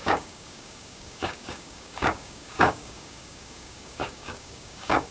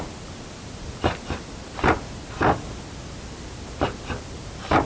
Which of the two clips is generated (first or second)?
first